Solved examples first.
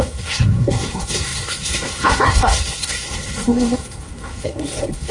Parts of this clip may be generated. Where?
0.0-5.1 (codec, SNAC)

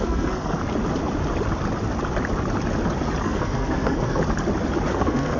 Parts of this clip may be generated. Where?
0.0-0.6 (codec, SNAC); 3.2-4.2; 4.9-5.4

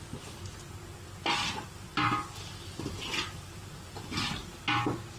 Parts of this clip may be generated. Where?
none

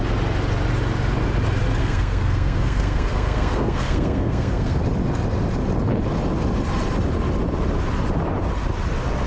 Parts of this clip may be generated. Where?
1.8-4.8 (codec, SNAC)

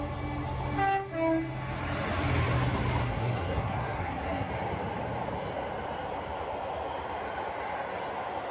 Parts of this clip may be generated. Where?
3.0-4.5 (codec, SNAC)

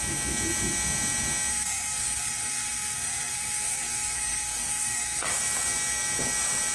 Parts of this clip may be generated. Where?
1.5-5.3 (codec, SNAC)

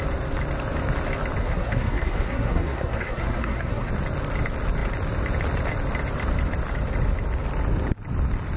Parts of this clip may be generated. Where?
1.4-3.9 (codec, SNAC)

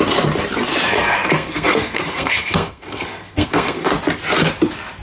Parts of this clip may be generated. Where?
0.9-3.9 (codec, SNAC)